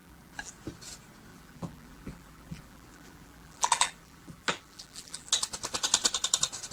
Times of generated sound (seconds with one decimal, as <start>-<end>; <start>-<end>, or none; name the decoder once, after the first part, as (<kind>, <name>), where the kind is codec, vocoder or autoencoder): 0.0-0.5 (vocoder, BigVGAN v2); 1.3-5.3